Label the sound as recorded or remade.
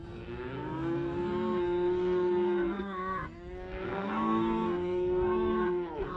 remade